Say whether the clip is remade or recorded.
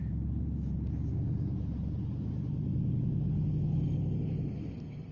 recorded